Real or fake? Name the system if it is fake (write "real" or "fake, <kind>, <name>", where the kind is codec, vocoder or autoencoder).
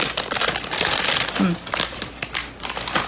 real